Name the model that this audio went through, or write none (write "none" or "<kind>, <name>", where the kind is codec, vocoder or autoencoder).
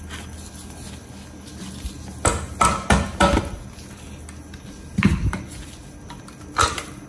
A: none